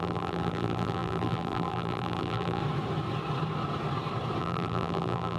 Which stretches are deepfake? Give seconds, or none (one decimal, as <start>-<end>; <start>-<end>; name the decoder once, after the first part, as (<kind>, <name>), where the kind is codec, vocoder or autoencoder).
0.0-2.6 (vocoder, BigVGAN v2); 4.4-5.4